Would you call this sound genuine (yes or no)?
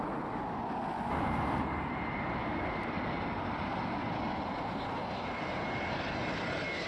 yes